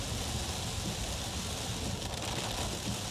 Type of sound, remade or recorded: recorded